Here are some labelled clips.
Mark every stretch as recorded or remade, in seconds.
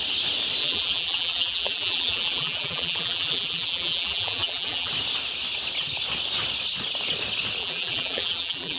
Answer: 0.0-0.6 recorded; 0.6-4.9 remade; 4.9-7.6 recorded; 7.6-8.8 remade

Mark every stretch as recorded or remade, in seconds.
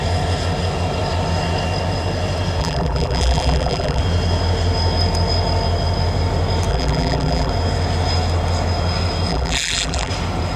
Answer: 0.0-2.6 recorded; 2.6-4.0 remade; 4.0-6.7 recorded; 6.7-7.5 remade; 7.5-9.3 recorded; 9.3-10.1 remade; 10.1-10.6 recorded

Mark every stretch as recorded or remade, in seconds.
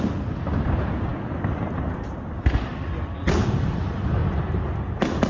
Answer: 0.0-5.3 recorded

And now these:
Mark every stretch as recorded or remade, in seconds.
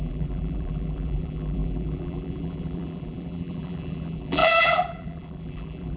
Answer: 0.0-6.0 remade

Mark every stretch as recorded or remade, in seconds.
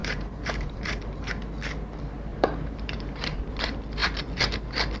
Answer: 0.0-1.3 remade; 1.3-2.3 recorded; 2.3-3.4 remade; 3.4-5.0 recorded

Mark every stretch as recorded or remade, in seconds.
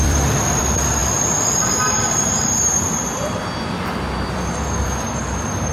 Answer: 0.0-1.0 remade; 1.0-1.7 recorded; 1.7-5.7 remade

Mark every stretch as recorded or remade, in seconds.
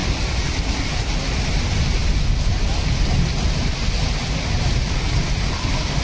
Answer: 0.0-1.0 remade; 1.0-6.0 recorded